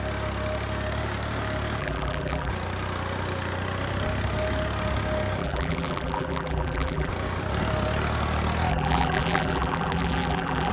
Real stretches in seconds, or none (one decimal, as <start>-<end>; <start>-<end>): 0.0-1.8; 2.5-5.4; 7.1-8.7